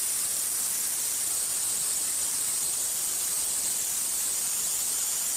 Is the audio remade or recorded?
recorded